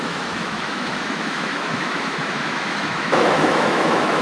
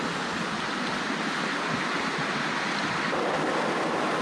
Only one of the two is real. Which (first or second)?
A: second